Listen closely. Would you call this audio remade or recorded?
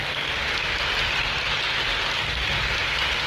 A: recorded